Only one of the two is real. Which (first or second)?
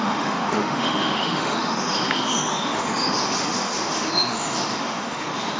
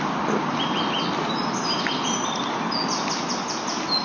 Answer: second